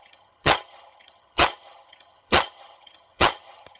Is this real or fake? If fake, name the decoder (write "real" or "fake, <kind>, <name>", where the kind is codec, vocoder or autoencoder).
fake, vocoder, HiFi-GAN